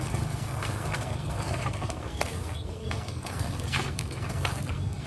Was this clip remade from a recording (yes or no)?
yes